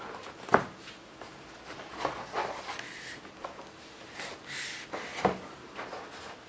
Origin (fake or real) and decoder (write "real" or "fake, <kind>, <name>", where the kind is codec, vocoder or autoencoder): real